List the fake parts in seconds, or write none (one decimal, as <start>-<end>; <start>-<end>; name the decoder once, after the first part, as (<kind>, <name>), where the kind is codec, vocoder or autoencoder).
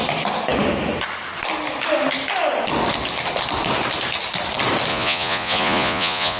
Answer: 4.9-6.4 (vocoder, Vocos)